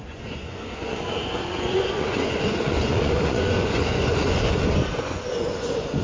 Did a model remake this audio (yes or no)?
yes